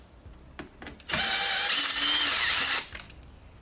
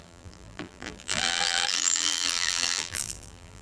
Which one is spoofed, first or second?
second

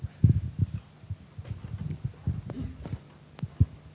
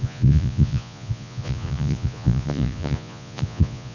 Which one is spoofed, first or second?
second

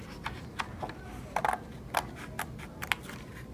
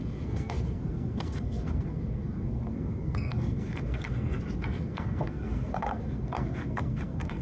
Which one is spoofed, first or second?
second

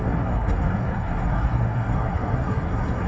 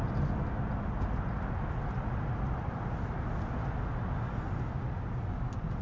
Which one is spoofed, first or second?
first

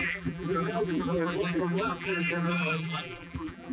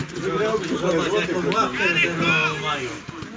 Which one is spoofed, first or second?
first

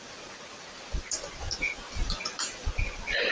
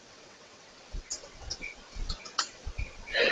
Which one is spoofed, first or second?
second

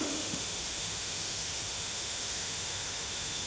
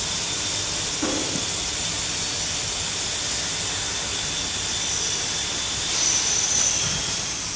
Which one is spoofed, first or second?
first